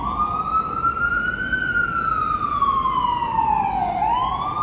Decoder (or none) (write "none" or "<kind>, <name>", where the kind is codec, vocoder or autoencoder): none